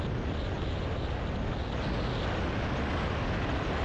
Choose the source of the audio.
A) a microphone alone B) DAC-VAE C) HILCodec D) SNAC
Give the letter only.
A